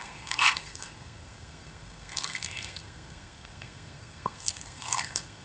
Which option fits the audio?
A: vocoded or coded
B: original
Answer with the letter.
A